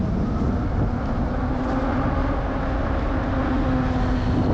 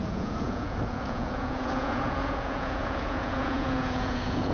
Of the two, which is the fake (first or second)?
second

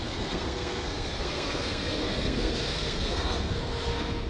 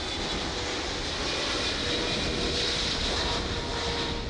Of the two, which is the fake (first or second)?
first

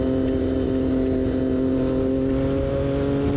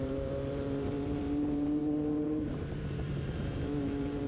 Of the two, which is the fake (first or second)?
second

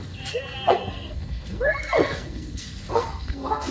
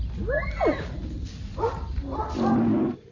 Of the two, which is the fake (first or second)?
first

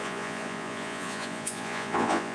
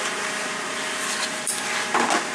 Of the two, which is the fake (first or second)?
first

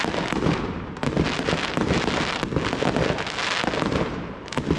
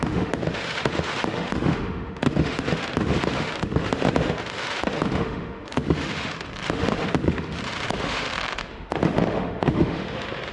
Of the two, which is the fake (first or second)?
second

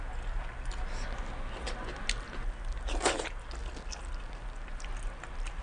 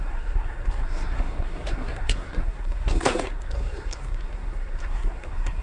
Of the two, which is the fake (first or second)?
second